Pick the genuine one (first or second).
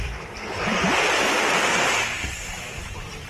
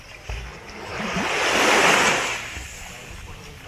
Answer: second